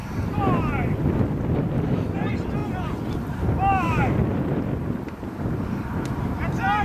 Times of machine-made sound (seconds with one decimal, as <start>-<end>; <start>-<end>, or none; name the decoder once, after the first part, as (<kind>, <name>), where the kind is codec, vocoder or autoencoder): none